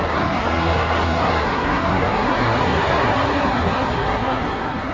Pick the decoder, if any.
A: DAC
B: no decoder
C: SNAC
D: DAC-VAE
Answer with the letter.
C